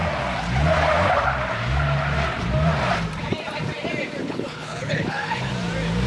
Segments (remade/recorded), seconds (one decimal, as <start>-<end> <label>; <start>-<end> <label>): 0.0-4.2 recorded; 4.2-5.5 remade; 5.5-6.1 recorded